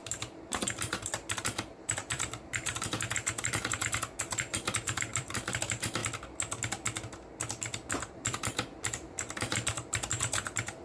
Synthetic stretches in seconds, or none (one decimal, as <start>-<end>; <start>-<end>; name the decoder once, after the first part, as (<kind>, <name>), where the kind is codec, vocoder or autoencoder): 0.0-6.0 (vocoder, BigVGAN v2); 8.1-10.8